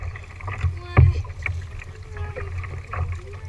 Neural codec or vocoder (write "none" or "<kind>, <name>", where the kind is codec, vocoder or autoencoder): none